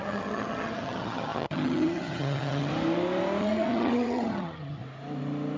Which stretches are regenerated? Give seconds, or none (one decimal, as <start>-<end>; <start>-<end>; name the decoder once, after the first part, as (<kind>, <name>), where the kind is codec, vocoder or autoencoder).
0.0-2.7 (vocoder, HiFi-GAN); 3.4-4.8